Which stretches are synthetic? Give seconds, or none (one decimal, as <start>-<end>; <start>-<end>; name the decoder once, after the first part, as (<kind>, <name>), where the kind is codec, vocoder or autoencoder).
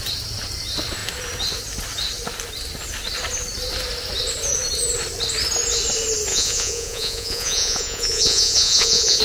6.3-9.2 (vocoder, Vocos)